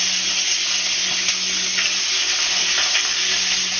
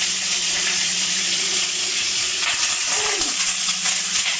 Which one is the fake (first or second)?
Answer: second